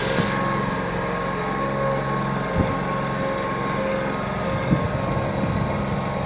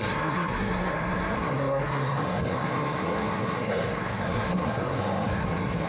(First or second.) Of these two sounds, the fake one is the second